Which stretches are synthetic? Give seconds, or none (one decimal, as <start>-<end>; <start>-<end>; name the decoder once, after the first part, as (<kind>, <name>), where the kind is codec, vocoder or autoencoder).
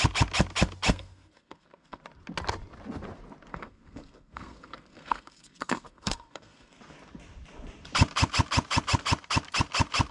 0.9-2.0 (codec, SNAC); 3.5-6.8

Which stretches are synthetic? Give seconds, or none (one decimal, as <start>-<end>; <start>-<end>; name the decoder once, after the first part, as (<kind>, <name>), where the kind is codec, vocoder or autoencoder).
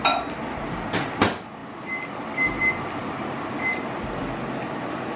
none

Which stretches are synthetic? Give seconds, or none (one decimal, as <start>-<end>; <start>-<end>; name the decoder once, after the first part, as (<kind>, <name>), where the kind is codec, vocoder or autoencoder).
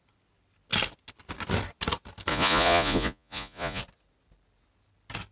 2.3-3.8 (vocoder, Vocos)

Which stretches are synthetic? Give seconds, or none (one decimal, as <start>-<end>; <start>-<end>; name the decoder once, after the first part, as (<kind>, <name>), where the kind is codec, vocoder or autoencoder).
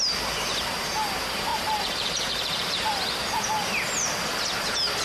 1.5-2.9 (vocoder, BigVGAN v2)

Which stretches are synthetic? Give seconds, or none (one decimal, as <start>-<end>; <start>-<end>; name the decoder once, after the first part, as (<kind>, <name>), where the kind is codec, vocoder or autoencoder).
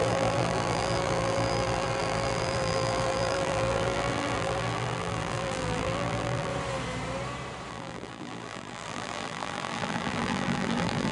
0.0-6.5 (vocoder, BigVGAN v2); 7.7-11.1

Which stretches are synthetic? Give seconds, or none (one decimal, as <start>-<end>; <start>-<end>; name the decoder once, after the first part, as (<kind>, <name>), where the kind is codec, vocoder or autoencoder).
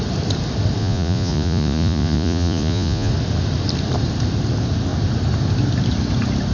0.8-3.1 (vocoder, Vocos)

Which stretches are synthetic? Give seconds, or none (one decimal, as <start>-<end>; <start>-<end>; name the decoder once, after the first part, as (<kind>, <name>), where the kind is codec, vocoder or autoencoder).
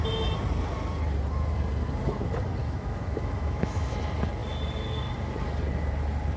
2.6-3.9 (autoencoder, DAC-VAE)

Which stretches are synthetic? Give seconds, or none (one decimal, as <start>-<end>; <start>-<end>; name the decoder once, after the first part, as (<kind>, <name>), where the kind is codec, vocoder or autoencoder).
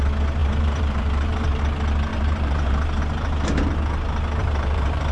0.4-1.6 (vocoder, BigVGAN v2); 2.1-3.0; 4.4-5.1